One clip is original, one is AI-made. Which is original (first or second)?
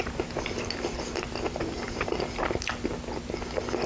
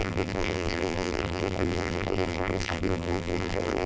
first